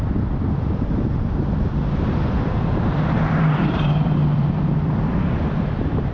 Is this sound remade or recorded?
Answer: remade